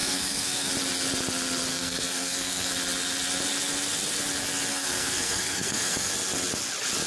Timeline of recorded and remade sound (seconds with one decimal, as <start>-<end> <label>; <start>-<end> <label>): 0.0-0.7 remade; 0.7-1.7 recorded; 1.7-2.7 remade; 2.7-4.7 recorded; 4.7-6.1 remade; 6.1-7.1 recorded